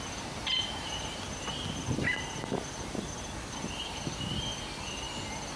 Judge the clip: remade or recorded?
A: recorded